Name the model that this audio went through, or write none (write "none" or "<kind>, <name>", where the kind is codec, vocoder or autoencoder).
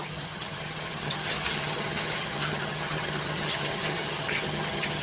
vocoder, HiFi-GAN